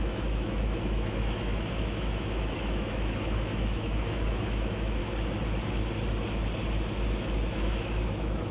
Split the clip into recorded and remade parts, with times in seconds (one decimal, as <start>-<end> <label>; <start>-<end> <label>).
0.0-5.0 remade; 5.0-7.5 recorded; 7.5-8.5 remade